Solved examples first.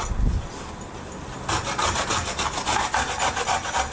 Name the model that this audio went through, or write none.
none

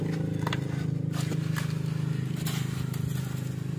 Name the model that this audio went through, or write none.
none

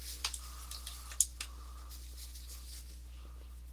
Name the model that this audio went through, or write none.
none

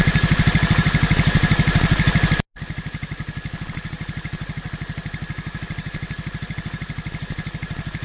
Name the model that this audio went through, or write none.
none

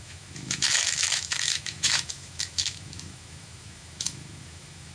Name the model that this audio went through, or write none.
autoencoder, DAC-VAE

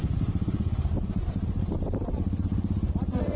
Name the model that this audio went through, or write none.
none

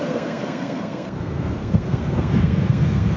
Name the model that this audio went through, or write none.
codec, SNAC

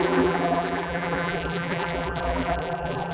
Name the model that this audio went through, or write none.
vocoder, BigVGAN v2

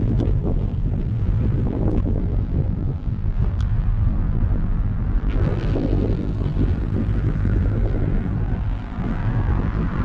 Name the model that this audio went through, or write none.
vocoder, BigVGAN v2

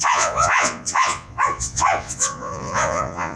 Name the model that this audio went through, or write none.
vocoder, Vocos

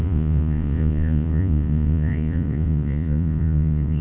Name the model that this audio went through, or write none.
vocoder, Vocos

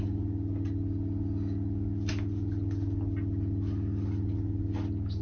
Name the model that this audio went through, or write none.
none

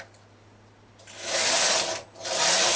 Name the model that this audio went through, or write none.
none